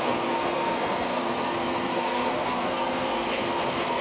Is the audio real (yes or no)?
no